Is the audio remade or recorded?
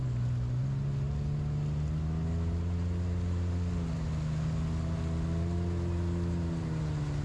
recorded